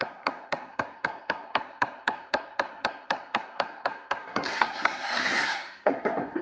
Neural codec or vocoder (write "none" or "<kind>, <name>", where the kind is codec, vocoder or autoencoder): codec, SNAC